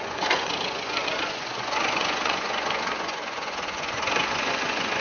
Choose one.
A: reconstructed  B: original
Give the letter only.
A